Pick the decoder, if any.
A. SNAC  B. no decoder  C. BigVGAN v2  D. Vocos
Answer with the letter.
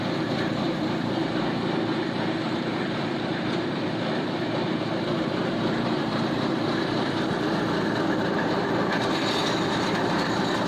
C